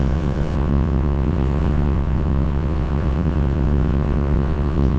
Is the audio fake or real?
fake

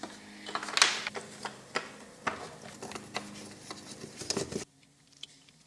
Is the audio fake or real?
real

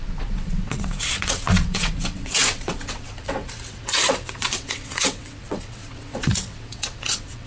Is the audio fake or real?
fake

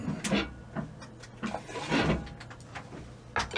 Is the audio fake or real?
real